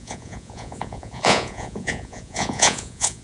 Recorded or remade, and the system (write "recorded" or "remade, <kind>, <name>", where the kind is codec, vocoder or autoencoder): remade, vocoder, Vocos